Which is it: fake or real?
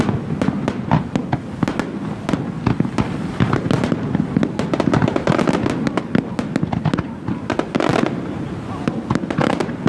real